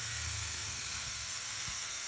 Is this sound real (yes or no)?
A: no